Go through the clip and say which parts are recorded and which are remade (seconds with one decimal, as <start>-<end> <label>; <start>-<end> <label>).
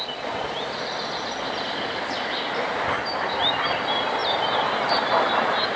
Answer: 0.0-5.8 recorded